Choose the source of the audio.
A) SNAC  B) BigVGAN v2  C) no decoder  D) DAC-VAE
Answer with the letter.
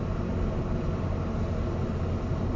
C